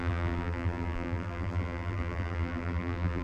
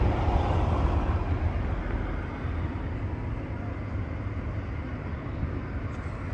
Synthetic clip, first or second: first